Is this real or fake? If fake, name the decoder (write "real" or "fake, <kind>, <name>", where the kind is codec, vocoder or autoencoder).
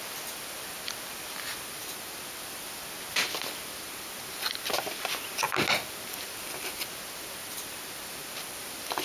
real